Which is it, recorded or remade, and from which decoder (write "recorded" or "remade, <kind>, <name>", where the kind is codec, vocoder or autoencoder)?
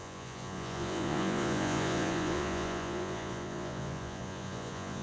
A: remade, vocoder, Vocos